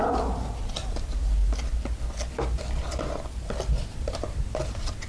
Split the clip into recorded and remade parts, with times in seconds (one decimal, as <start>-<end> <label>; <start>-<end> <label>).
0.0-1.4 remade; 1.4-2.8 recorded; 2.8-5.1 remade